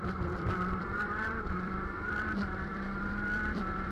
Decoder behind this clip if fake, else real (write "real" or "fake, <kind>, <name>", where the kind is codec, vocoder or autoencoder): fake, vocoder, BigVGAN v2